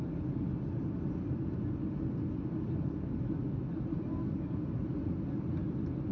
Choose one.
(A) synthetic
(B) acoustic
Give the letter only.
B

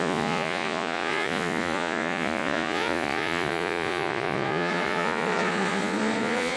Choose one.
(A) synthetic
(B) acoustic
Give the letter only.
A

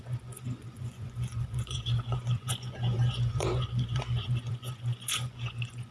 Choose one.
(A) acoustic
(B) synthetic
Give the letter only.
B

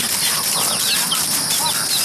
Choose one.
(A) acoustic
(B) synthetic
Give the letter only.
A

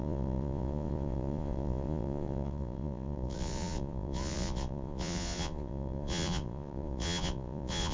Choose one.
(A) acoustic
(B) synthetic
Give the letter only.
B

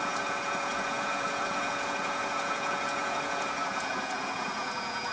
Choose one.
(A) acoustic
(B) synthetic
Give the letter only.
B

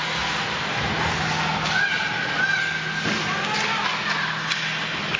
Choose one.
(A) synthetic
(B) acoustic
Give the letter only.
B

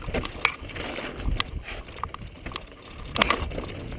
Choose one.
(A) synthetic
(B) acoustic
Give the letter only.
B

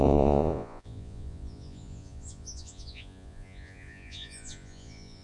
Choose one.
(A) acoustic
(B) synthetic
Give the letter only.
B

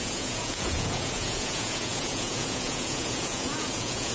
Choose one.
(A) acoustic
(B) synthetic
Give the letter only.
B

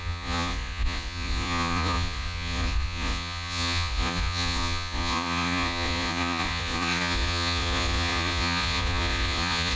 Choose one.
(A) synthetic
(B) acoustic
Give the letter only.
A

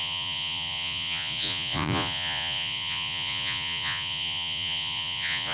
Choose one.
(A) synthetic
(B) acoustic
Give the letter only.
A